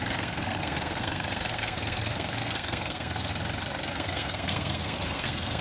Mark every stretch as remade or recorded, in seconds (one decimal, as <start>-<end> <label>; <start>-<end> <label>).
0.0-3.3 remade; 3.3-3.9 recorded; 3.9-5.6 remade

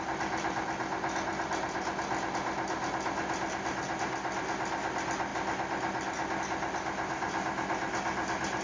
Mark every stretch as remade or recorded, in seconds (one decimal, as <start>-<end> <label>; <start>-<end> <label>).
0.0-8.6 recorded

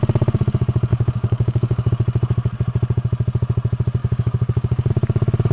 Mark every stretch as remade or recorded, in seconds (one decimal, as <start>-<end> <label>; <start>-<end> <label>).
0.0-0.9 recorded; 0.9-1.9 remade; 1.9-4.0 recorded; 4.0-4.9 remade; 4.9-5.5 recorded

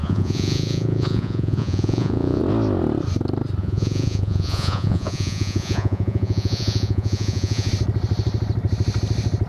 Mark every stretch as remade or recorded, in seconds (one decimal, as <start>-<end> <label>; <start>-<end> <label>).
0.0-2.4 remade; 2.4-3.6 recorded; 3.6-7.7 remade; 7.7-9.5 recorded